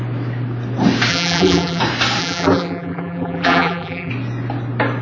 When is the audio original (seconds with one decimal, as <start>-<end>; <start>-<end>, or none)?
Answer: 0.0-1.1; 1.8-2.2; 4.1-5.0